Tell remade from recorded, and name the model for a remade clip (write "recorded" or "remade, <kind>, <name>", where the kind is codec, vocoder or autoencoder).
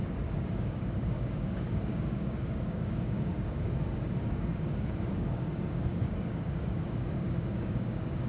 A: remade, codec, DAC